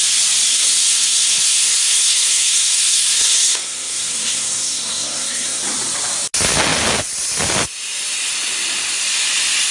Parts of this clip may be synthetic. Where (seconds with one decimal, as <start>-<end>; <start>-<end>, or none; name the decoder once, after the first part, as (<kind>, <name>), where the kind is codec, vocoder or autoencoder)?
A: 0.5-5.6 (codec, SNAC)